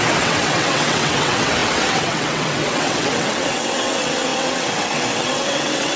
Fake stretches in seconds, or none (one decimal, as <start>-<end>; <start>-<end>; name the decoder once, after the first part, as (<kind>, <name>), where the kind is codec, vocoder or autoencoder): 0.0-6.0 (vocoder, WaveNeXt)